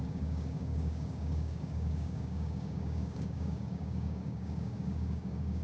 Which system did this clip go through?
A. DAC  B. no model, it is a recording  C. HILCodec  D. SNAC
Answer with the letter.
A